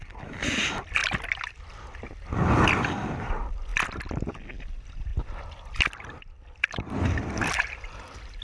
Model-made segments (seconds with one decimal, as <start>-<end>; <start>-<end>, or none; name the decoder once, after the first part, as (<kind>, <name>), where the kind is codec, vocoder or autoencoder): 0.0-3.7 (vocoder, BigVGAN v2); 4.3-5.1; 6.5-8.4